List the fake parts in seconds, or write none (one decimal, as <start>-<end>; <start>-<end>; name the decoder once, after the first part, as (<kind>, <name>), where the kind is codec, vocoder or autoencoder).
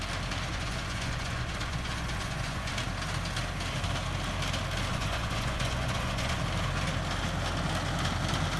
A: 0.5-2.7 (vocoder, Vocos); 4.9-6.4